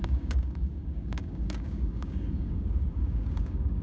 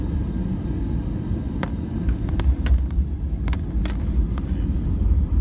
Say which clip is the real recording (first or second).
second